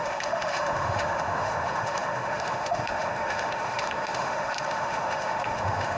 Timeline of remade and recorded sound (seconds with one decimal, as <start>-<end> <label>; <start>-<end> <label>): 0.0-6.0 remade